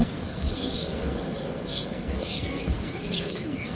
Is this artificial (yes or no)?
yes